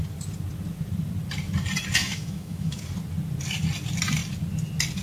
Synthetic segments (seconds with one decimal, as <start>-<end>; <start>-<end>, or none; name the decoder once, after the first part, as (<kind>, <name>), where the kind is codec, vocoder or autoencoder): 2.0-2.8 (autoencoder, DAC-VAE)